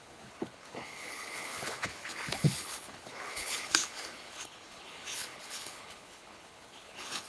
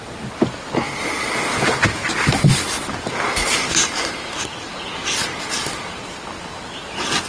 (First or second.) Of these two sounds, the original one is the second